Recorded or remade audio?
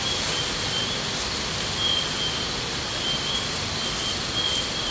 recorded